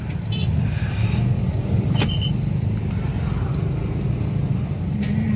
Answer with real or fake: real